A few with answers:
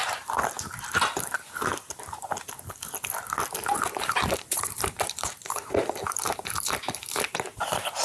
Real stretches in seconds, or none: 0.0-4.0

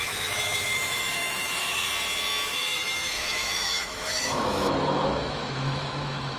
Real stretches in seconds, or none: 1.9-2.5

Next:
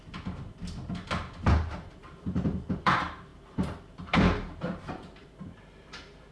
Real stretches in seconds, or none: 0.0-1.5

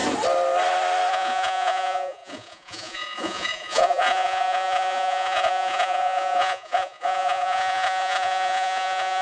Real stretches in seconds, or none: 0.0-1.1

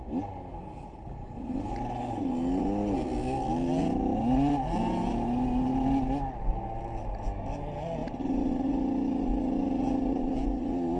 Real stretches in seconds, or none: 0.0-8.0; 8.7-11.0

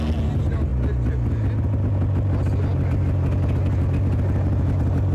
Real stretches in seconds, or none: 0.0-5.1

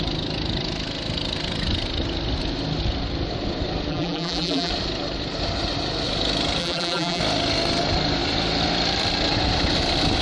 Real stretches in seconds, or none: 0.0-3.9; 4.7-6.6; 7.2-10.2

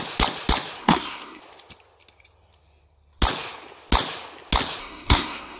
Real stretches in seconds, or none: 0.0-0.8; 1.4-4.8